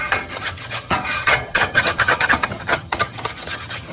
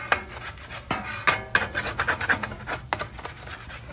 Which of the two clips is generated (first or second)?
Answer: first